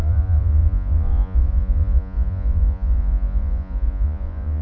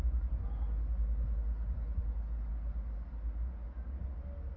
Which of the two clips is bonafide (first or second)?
second